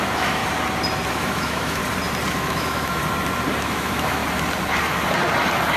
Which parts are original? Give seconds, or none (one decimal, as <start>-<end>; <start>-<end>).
0.4-1.1; 1.8-2.3; 3.0-3.6; 4.2-5.8